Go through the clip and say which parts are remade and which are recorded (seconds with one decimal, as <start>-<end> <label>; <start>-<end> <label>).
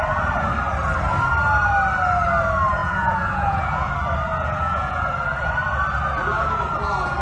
0.0-2.8 recorded; 2.8-3.9 remade; 3.9-4.3 recorded; 4.3-5.0 remade; 5.0-7.2 recorded